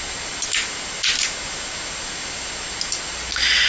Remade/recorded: recorded